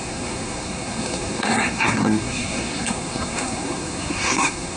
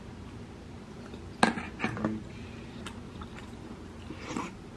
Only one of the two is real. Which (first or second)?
second